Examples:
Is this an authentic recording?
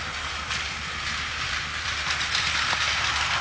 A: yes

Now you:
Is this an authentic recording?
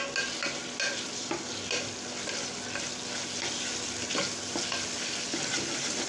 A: yes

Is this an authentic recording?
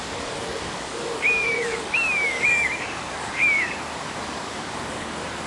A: no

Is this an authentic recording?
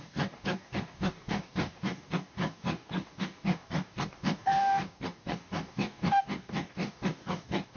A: no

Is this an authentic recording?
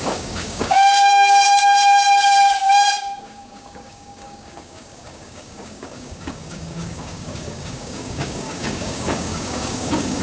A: no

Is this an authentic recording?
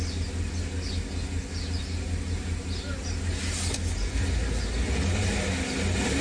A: yes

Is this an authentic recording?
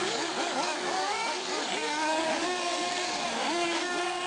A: no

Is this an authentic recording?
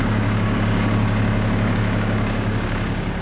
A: no